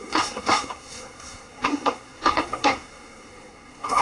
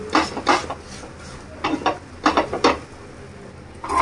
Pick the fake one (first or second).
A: first